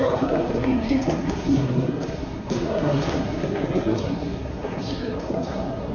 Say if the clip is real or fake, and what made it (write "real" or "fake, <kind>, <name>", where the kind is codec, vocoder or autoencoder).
fake, codec, SNAC